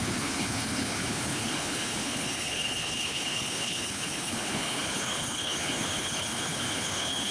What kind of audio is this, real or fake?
fake